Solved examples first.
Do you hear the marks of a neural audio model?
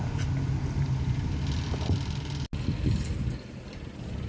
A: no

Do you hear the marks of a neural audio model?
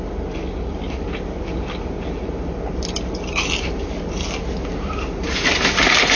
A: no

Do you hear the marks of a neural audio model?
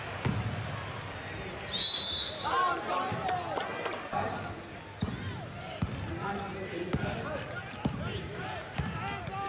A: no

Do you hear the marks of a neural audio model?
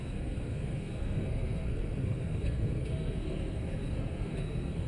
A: yes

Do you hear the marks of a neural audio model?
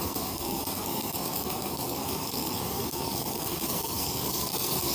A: yes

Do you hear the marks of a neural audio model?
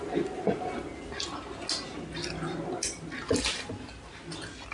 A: no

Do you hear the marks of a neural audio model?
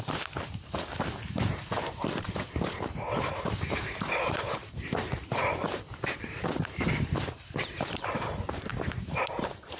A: yes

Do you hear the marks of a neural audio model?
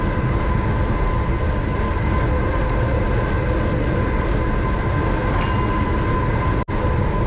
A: no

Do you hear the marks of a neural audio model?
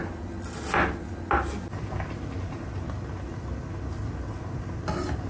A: no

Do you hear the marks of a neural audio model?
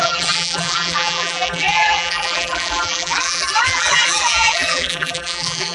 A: yes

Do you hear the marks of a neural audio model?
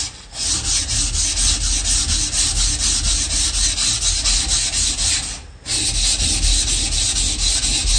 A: no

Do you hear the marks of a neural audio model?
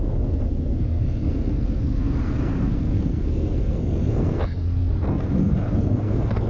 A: yes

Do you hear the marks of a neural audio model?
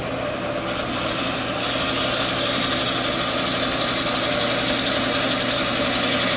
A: no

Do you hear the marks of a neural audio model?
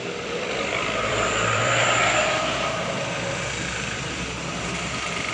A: yes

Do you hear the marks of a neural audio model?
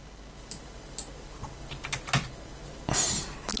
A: no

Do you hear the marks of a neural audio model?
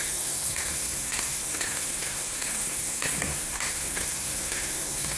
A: yes